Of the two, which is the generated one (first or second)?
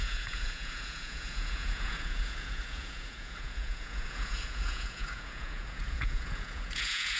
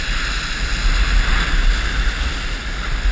first